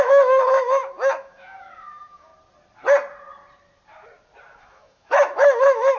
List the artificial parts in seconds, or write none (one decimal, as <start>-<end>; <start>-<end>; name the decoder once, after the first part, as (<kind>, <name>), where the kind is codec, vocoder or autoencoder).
0.0-2.3 (autoencoder, DAC-VAE); 4.6-6.0